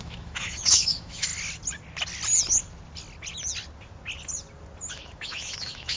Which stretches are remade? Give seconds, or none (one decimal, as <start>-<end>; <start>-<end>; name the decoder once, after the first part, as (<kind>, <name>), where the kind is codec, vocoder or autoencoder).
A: 0.0-1.3 (autoencoder, DAC-VAE); 4.9-6.0